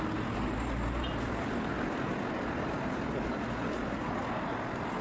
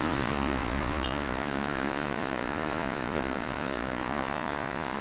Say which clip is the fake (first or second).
second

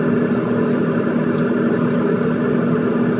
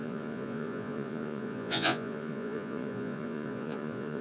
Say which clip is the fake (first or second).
second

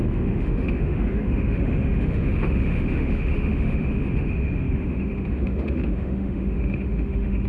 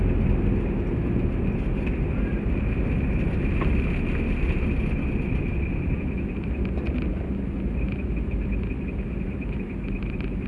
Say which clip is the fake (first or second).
first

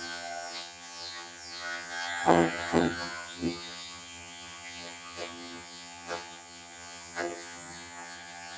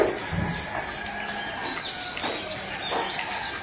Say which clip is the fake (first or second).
first